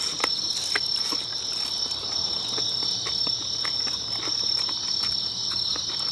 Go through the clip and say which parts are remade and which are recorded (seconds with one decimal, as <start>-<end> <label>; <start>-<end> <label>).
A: 0.0-6.1 recorded